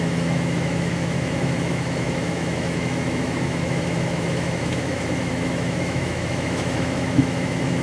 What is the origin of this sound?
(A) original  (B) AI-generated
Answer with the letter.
B